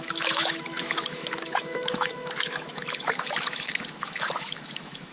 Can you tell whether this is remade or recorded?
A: remade